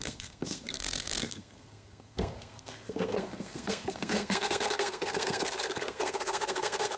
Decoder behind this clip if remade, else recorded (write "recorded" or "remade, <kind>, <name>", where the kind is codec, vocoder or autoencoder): remade, codec, SNAC